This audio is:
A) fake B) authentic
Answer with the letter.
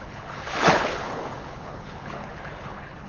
A